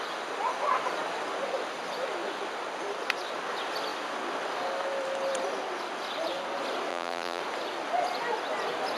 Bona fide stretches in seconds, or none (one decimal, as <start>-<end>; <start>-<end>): 0.0-6.9; 7.4-9.0